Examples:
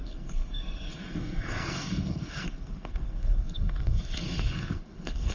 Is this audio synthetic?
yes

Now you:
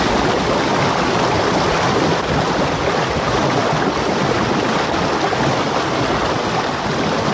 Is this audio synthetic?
no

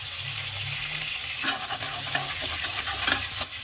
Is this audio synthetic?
no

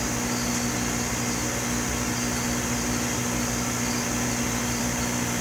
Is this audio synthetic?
no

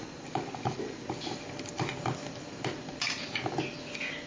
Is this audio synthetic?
no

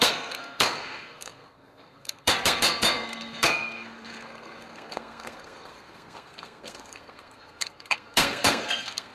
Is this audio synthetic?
yes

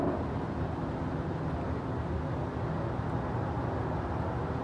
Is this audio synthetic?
no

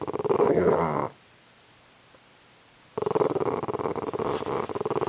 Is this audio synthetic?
no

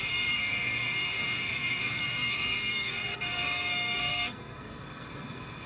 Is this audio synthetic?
yes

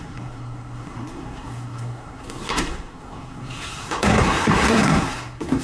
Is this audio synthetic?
yes